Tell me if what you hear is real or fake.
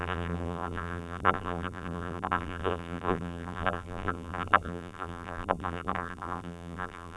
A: fake